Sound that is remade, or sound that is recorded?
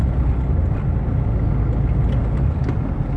recorded